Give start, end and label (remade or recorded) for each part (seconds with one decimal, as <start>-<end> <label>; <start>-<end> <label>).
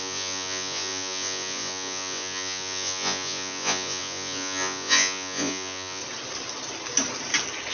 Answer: 0.0-6.0 remade; 6.0-7.7 recorded